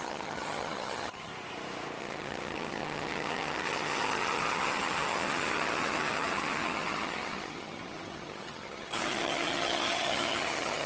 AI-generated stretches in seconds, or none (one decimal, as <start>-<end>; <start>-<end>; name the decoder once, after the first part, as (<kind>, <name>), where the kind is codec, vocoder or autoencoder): 0.0-1.3 (vocoder, HiFi-GAN); 2.0-10.9